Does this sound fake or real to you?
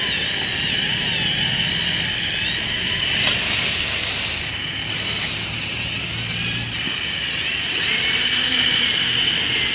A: real